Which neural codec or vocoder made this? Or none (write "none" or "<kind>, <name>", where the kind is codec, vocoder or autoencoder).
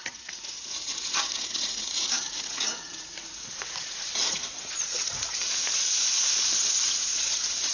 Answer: vocoder, Vocos